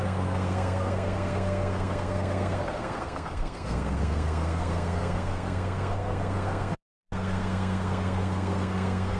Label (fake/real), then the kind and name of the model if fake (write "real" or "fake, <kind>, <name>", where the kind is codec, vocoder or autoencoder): fake, codec, SNAC